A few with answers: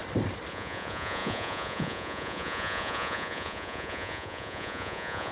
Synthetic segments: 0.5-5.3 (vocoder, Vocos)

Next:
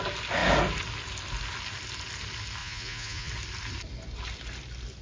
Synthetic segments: 2.6-3.3 (vocoder, Vocos)

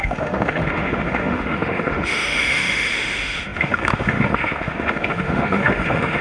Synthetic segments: 0.0-6.2 (autoencoder, DAC-VAE)

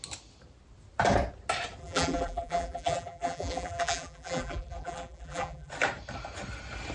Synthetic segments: 1.8-5.7 (vocoder, BigVGAN v2)

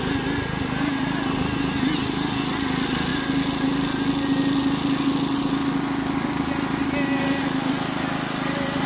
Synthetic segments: none